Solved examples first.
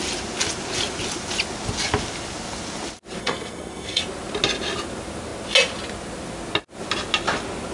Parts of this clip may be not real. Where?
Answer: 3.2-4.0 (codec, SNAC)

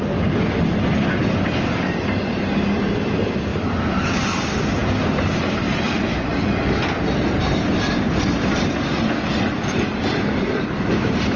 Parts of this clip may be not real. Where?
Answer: none